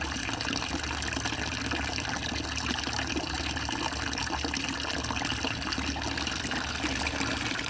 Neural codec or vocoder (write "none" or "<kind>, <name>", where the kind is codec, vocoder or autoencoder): none